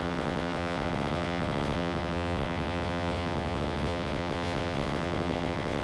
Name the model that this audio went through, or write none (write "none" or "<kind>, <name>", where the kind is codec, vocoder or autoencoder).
vocoder, WaveNeXt